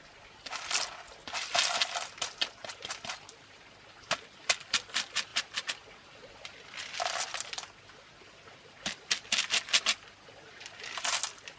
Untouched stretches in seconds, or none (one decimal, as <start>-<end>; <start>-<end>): 0.0-11.6